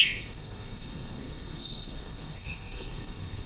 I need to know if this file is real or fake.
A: fake